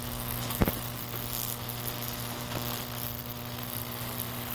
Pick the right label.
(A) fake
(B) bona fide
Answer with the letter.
B